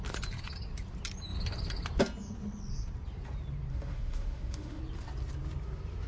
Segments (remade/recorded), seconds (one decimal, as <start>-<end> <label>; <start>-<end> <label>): 0.0-3.7 recorded; 3.7-4.8 remade; 4.8-6.1 recorded